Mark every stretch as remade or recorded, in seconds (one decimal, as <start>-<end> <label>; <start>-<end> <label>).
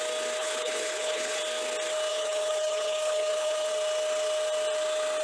0.0-0.4 recorded; 0.4-1.4 remade; 1.4-2.1 recorded; 2.1-3.7 remade; 3.7-5.2 recorded